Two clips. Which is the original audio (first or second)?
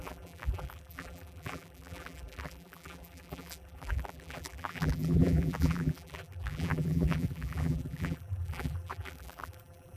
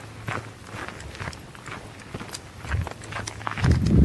second